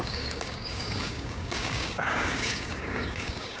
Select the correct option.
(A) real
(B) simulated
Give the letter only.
B